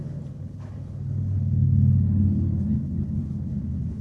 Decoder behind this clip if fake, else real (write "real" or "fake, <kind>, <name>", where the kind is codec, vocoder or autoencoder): fake, codec, HILCodec